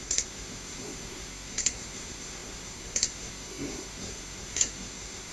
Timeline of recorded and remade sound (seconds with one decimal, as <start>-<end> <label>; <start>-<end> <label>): 0.0-5.3 remade